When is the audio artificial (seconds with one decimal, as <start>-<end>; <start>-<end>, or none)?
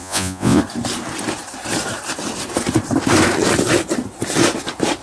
0.0-0.6